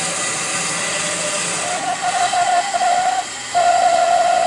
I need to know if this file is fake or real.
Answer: real